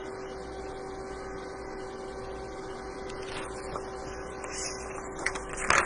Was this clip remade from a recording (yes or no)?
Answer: no